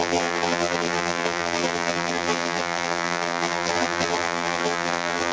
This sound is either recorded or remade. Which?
remade